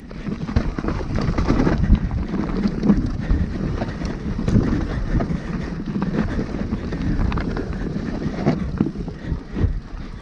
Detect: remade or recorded remade